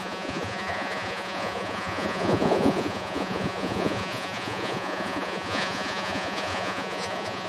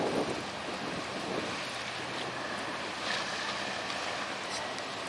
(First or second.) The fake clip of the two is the first